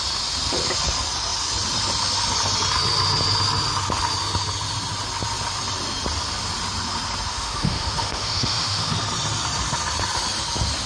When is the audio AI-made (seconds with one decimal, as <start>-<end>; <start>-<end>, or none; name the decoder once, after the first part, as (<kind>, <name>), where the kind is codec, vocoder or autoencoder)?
7.3-8.9 (autoencoder, DAC-VAE)